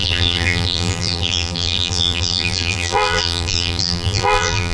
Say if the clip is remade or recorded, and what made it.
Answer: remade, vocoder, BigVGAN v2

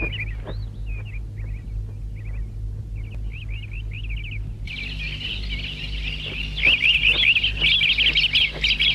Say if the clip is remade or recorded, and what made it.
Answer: recorded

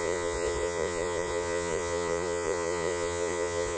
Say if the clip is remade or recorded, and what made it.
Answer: remade, vocoder, Vocos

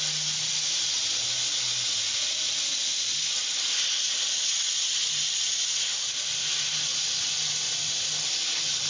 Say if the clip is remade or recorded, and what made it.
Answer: recorded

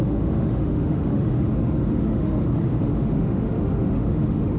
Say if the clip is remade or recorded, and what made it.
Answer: remade, autoencoder, DAC-VAE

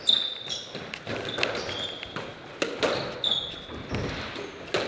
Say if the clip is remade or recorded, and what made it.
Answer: recorded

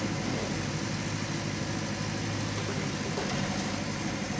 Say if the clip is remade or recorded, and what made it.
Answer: recorded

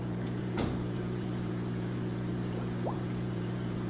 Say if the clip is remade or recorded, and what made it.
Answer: remade, vocoder, Vocos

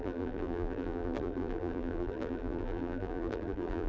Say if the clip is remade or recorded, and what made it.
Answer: remade, vocoder, BigVGAN v2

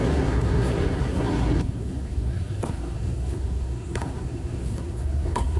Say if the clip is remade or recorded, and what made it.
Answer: remade, codec, SNAC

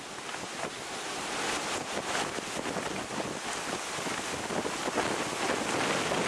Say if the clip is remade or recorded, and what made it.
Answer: recorded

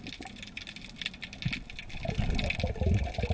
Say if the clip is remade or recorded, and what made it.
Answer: recorded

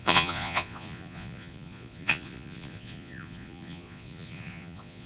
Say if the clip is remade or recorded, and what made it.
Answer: remade, vocoder, Vocos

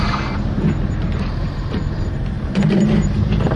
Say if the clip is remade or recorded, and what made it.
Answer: remade, vocoder, BigVGAN v2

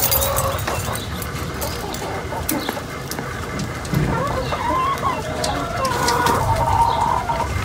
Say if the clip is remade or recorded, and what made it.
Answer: recorded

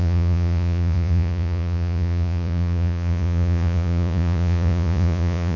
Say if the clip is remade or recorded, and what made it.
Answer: remade, vocoder, Vocos